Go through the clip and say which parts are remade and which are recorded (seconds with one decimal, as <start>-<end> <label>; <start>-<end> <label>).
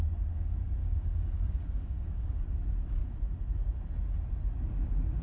0.0-0.8 recorded; 0.8-2.4 remade; 2.4-5.2 recorded